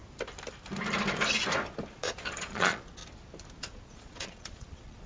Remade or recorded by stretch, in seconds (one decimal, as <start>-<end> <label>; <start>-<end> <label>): 0.0-1.9 recorded; 1.9-3.0 remade; 3.0-3.6 recorded; 3.6-5.1 remade